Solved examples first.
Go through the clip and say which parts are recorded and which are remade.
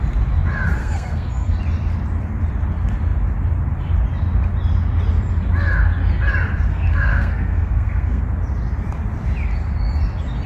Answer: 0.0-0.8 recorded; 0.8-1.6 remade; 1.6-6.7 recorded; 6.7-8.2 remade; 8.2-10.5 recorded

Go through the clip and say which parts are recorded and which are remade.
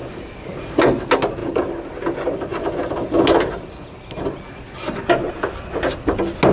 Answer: 0.0-6.5 recorded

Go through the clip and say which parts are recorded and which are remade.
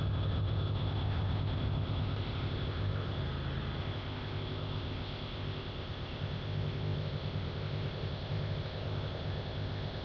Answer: 0.0-3.2 remade; 3.2-3.8 recorded; 3.8-10.0 remade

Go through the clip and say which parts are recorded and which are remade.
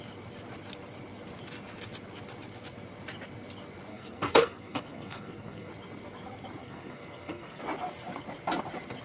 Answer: 0.0-3.9 recorded; 3.9-5.7 remade; 5.7-6.6 recorded; 6.6-7.6 remade; 7.6-9.0 recorded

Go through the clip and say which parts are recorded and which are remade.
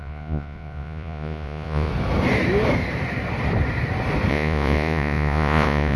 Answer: 0.0-1.9 remade; 1.9-4.3 recorded; 4.3-6.0 remade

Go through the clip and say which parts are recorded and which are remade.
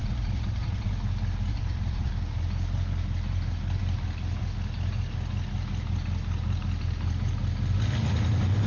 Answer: 0.0-0.9 remade; 0.9-1.5 recorded; 1.5-2.1 remade; 2.1-8.7 recorded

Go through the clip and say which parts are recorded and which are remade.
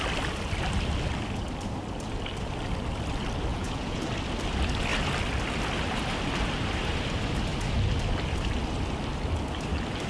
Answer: 0.0-3.5 recorded; 3.5-4.1 remade; 4.1-10.1 recorded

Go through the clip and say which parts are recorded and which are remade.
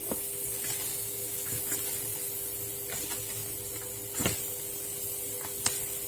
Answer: 0.0-0.9 recorded; 0.9-1.6 remade; 1.6-6.1 recorded